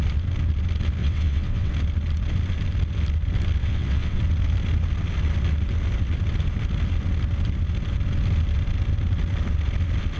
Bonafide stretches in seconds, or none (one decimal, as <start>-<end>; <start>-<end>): 0.0-1.0; 1.7-3.6; 4.2-10.2